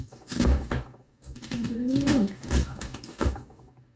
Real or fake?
fake